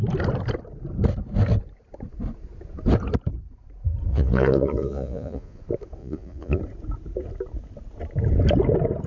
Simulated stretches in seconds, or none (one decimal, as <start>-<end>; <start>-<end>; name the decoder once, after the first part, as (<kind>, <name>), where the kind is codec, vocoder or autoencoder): 4.1-5.6 (vocoder, Vocos); 6.0-6.6